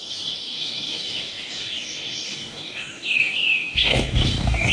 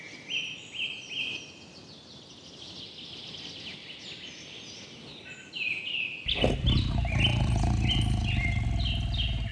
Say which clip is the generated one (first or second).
first